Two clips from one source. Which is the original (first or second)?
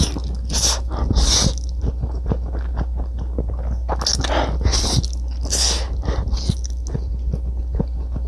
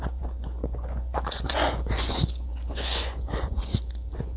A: first